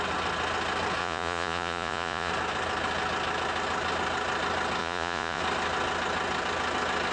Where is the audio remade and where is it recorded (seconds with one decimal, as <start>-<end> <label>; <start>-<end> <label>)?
0.0-1.0 recorded; 1.0-2.3 remade; 2.3-4.8 recorded; 4.8-5.4 remade; 5.4-7.1 recorded